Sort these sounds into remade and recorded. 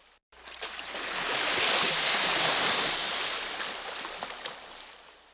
recorded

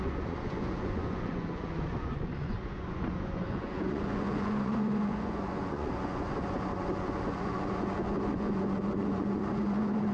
remade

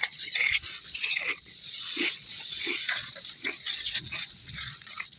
remade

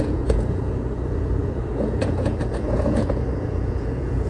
remade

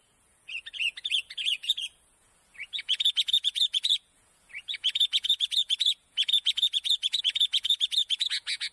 remade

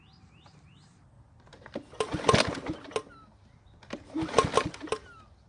recorded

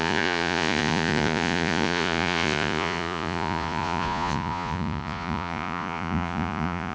remade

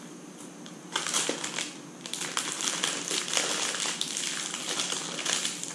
recorded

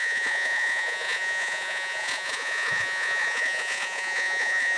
remade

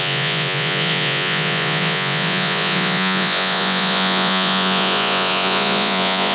remade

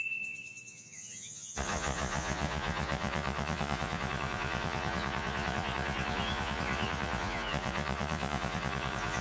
remade